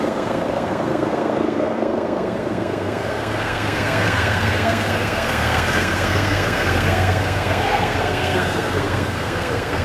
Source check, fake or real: fake